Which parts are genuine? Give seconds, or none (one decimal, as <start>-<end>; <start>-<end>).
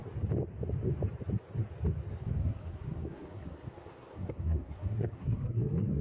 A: 0.0-2.4